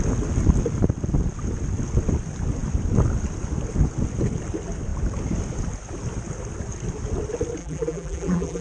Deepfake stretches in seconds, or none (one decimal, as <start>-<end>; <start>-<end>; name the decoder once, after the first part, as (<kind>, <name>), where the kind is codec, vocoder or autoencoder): 7.6-8.6 (vocoder, BigVGAN v2)